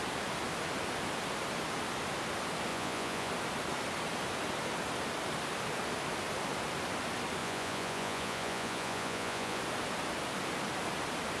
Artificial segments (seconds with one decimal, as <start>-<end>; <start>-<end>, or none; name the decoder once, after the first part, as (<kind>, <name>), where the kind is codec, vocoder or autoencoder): 2.7-3.3 (vocoder, Vocos); 7.4-9.6